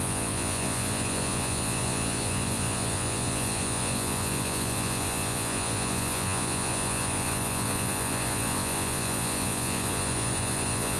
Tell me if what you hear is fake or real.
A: fake